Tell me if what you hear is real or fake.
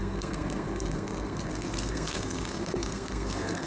fake